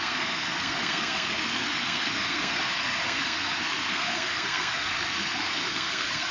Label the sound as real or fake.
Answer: fake